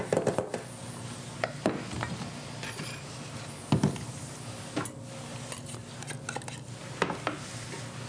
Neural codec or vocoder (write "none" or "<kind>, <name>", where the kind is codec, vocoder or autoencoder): none